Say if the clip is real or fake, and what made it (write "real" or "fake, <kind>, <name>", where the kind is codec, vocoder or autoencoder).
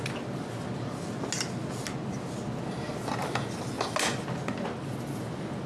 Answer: real